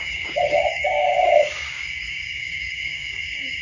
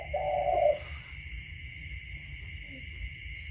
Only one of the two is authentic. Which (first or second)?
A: second